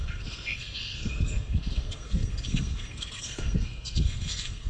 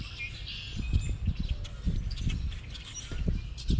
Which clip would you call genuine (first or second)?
second